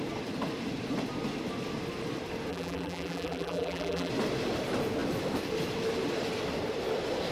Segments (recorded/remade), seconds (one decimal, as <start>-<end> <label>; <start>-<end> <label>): 0.0-2.5 recorded; 2.5-4.1 remade; 4.1-7.3 recorded